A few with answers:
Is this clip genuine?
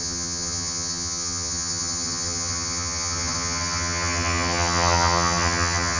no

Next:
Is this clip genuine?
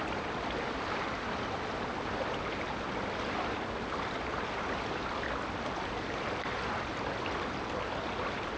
yes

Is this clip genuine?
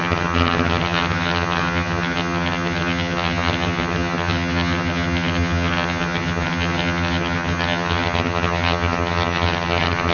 no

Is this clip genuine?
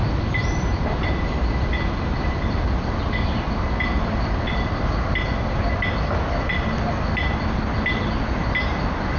yes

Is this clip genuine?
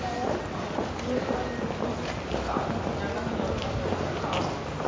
yes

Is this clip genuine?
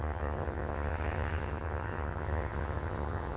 no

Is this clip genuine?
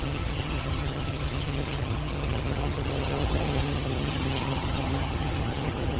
no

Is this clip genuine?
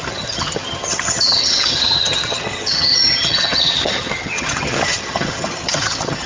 no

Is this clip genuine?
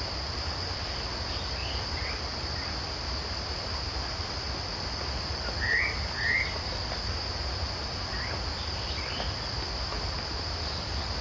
yes